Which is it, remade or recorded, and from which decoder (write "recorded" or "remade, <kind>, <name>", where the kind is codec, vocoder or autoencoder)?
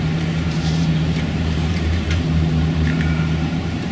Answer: remade, vocoder, BigVGAN v2